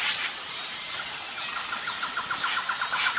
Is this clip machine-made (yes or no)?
no